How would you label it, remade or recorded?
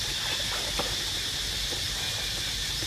recorded